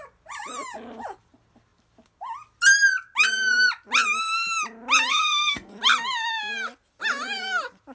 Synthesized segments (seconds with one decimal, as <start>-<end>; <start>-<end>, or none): 5.1-5.7